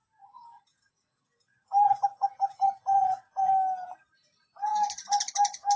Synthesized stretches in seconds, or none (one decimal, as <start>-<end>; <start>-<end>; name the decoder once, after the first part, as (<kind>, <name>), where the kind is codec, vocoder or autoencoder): 0.0-3.5 (vocoder, Vocos)